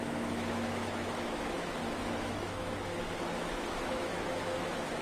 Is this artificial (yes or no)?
yes